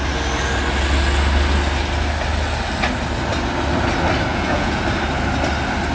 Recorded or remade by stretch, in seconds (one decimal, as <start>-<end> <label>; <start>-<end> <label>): 0.0-4.3 recorded; 4.3-4.8 remade; 4.8-5.9 recorded